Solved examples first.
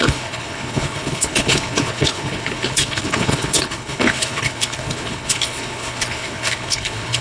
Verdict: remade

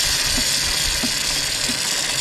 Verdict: recorded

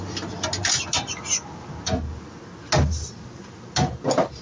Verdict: recorded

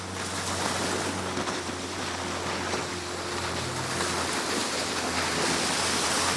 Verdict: recorded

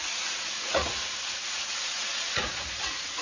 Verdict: remade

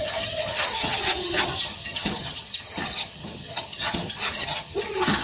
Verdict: remade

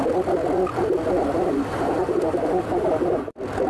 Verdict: remade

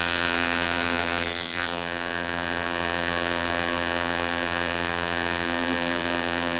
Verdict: remade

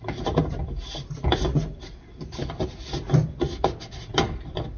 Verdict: recorded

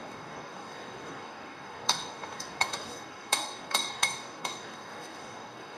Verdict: remade